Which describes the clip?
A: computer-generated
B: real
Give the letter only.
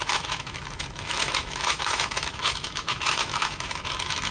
A